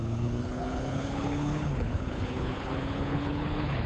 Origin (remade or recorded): remade